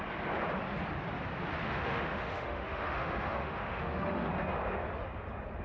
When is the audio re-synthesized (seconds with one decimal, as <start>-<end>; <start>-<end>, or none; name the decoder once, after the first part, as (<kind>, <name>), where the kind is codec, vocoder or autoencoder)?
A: 1.6-4.3 (autoencoder, DAC-VAE)